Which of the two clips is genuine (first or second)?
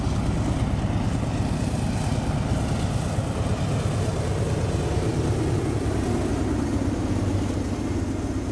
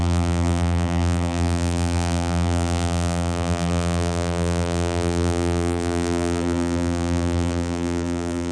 first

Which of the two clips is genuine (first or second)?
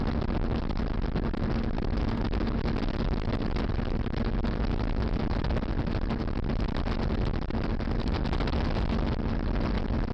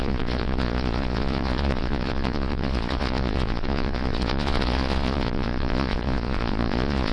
first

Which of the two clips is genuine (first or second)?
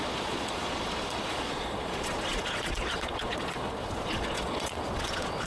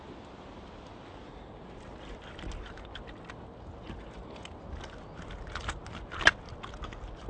second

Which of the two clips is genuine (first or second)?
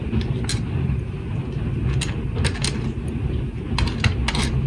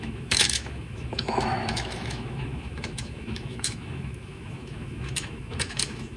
first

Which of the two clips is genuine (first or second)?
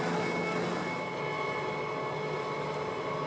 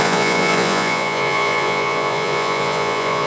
first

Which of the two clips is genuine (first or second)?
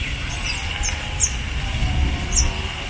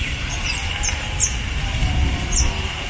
first